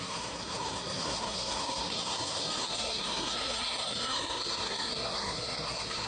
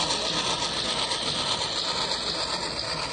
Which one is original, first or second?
second